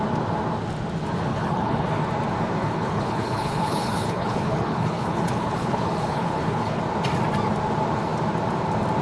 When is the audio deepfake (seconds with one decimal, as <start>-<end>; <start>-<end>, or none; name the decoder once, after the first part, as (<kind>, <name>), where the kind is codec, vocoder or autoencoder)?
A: 1.3-2.0 (codec, HILCodec); 2.6-6.8